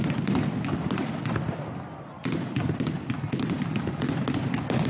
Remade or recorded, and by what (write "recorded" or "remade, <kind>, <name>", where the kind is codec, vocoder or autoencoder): recorded